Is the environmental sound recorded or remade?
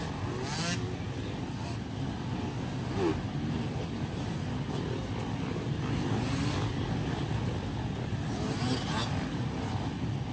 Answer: recorded